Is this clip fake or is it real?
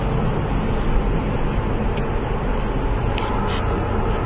real